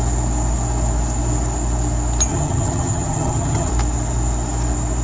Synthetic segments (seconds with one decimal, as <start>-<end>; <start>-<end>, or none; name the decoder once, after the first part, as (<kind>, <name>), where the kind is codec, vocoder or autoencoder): 2.3-3.7 (vocoder, HiFi-GAN)